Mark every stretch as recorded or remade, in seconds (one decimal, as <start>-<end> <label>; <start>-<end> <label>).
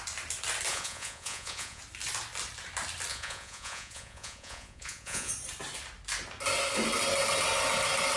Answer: 0.0-0.7 recorded; 0.7-1.8 remade; 1.8-3.1 recorded; 3.1-5.3 remade; 5.3-8.2 recorded